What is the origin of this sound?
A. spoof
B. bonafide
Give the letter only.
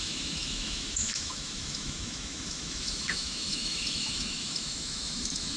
A